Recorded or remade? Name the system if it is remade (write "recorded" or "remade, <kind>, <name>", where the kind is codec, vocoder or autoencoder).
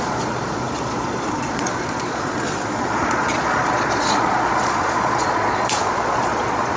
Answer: remade, vocoder, Vocos